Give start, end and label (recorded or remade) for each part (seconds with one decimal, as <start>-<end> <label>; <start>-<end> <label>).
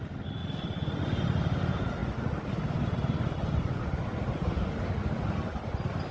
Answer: 0.0-6.1 recorded